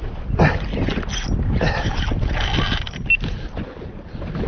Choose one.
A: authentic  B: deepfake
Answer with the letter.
A